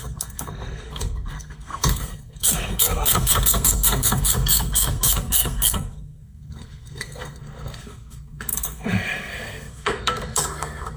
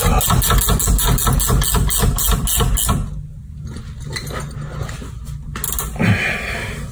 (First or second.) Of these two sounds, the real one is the second